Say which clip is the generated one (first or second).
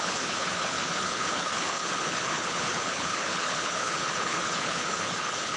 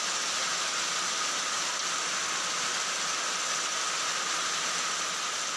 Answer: first